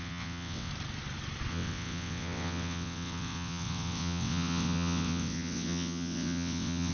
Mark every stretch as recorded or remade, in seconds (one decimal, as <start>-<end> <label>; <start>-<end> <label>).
0.0-0.7 remade; 0.7-1.5 recorded; 1.5-6.9 remade